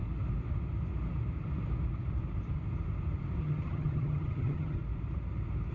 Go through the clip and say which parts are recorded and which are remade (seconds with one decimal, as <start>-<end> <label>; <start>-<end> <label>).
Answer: 0.0-3.4 recorded; 3.4-4.8 remade; 4.8-5.7 recorded